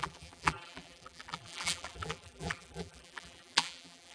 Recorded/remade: remade